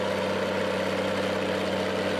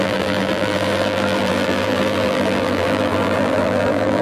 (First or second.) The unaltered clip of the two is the first